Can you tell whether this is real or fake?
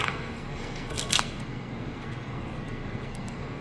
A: fake